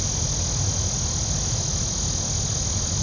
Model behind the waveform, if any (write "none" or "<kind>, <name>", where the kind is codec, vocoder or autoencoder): none